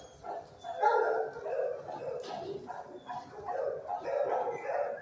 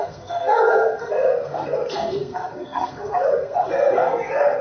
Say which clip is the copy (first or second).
second